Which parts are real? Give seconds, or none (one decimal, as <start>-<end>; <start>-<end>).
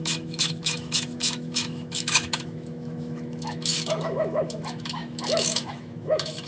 none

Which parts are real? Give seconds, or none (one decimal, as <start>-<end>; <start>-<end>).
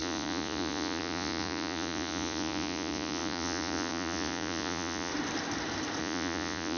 5.1-6.0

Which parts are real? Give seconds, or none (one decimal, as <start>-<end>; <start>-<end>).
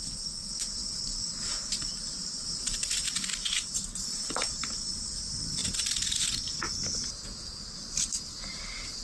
0.0-0.8; 4.8-9.0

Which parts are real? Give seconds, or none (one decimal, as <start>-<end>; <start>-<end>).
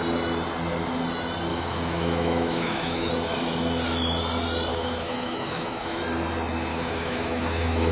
0.0-1.5; 3.1-4.7; 6.0-6.7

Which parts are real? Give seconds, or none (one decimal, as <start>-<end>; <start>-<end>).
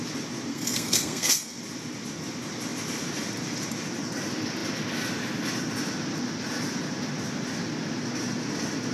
0.0-0.5; 1.6-8.9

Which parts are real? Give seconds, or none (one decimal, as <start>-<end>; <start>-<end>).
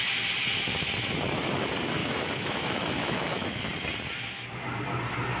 0.0-2.0; 3.6-5.4